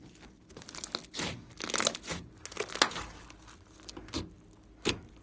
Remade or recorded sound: recorded